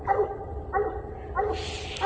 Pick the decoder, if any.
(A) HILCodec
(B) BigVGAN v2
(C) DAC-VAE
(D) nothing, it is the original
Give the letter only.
D